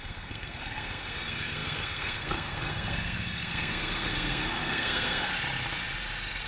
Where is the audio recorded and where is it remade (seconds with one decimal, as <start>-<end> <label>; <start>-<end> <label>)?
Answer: 0.0-5.3 remade; 5.3-6.5 recorded

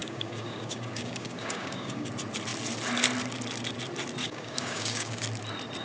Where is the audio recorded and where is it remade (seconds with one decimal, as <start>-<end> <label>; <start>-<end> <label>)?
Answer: 0.0-2.1 remade; 2.1-4.2 recorded; 4.2-5.2 remade; 5.2-5.8 recorded